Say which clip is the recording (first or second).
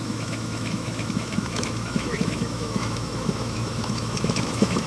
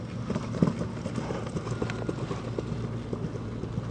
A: second